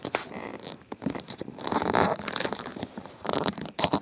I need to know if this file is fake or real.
fake